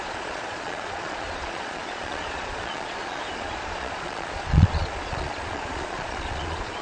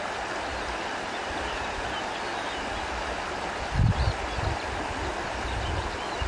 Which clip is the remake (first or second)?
first